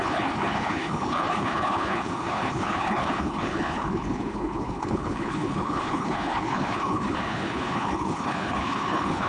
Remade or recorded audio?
remade